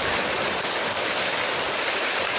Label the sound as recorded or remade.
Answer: recorded